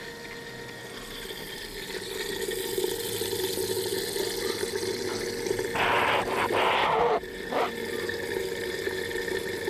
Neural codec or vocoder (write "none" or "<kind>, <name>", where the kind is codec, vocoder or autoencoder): none